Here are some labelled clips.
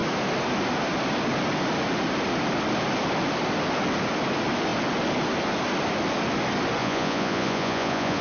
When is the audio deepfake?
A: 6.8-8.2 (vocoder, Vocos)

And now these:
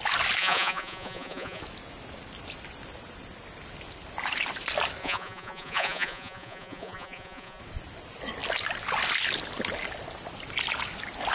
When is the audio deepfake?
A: 0.4-1.6 (vocoder, Vocos); 5.0-7.6

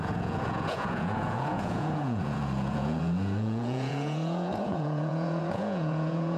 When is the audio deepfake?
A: 0.0-6.4 (vocoder, Vocos)

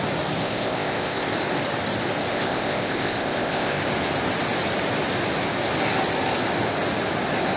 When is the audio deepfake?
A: 0.4-1.3 (codec, ZipCodec); 2.3-3.8

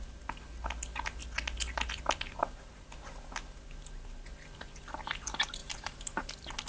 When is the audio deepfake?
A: 5.6-6.3 (vocoder, BigVGAN v2)

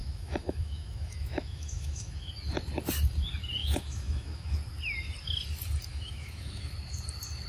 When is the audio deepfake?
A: 0.0-2.3 (autoencoder, DAC-VAE); 3.6-4.6; 5.9-6.7

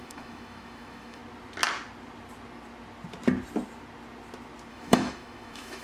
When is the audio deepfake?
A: 0.0-1.2 (autoencoder, DAC-VAE); 4.7-5.8

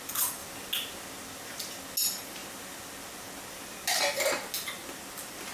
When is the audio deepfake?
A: none